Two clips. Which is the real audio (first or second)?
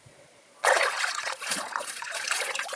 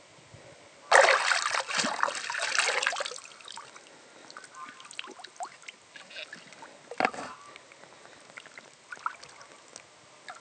second